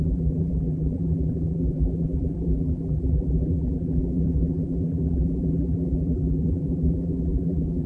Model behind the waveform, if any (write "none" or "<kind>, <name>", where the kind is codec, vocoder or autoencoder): vocoder, BigVGAN v2